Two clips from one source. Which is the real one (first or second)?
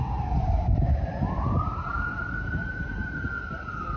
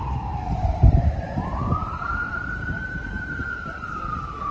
first